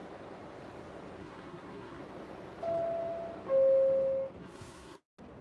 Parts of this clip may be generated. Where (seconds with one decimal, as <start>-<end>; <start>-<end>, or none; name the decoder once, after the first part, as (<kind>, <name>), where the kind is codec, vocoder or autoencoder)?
1.2-2.0 (codec, SNAC); 4.4-5.0